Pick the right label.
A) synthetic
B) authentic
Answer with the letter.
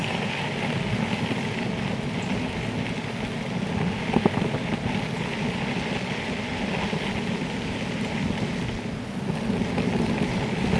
B